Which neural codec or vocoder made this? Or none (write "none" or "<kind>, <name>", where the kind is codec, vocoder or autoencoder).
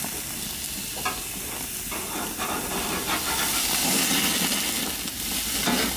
none